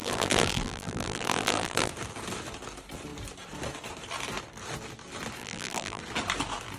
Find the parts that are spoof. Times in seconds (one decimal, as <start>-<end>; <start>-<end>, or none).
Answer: 0.0-1.9; 5.4-6.0